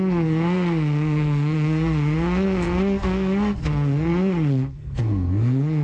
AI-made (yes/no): yes